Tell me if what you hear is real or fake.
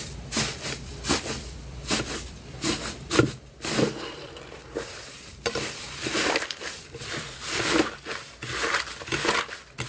fake